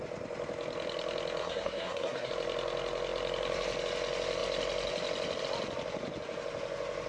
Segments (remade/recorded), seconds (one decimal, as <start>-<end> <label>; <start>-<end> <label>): 0.0-1.4 recorded; 1.4-2.3 remade; 2.3-7.1 recorded